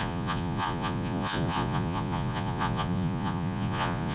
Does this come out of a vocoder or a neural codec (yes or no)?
yes